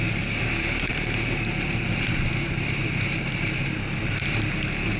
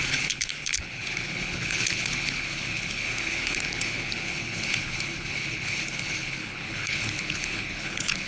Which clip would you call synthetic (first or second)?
second